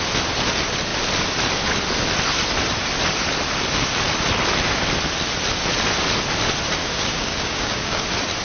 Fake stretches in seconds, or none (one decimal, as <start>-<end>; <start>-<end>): 6.8-8.0